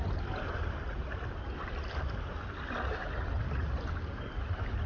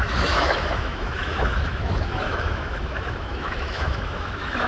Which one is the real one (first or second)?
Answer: first